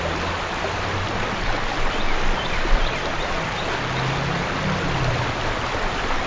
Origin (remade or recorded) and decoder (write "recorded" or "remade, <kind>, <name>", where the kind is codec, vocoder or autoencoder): recorded